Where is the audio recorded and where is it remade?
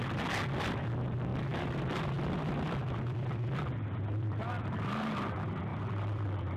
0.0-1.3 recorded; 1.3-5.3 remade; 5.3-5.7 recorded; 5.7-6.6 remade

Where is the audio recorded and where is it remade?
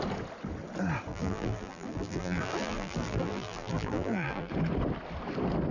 0.0-1.1 recorded; 1.1-4.5 remade; 4.5-5.7 recorded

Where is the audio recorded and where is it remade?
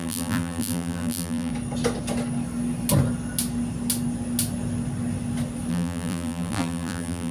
0.0-1.5 remade; 1.5-5.7 recorded; 5.7-7.3 remade